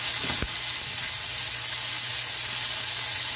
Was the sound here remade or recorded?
recorded